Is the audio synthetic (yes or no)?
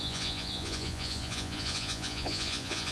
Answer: yes